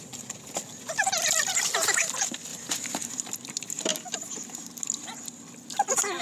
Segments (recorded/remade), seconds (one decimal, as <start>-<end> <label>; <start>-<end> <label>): 0.0-3.9 recorded; 3.9-5.1 remade; 5.1-6.2 recorded